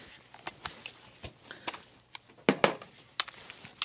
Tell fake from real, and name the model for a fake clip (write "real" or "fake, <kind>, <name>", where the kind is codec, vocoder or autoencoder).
real